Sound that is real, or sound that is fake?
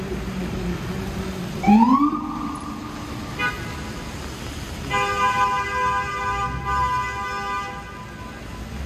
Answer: real